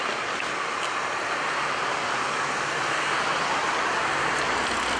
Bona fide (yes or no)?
yes